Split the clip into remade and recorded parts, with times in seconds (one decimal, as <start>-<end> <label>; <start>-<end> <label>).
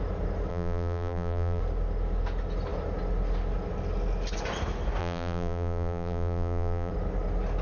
0.0-0.5 recorded; 0.5-1.6 remade; 1.6-5.0 recorded; 5.0-6.9 remade; 6.9-7.6 recorded